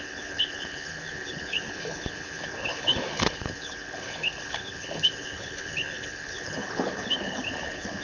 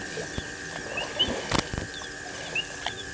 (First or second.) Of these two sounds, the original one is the second